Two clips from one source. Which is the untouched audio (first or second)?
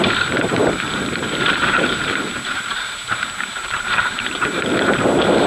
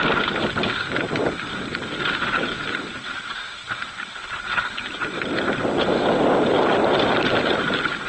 second